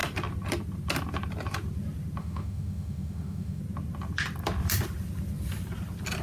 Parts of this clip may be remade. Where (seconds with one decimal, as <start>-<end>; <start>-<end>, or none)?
2.2-3.6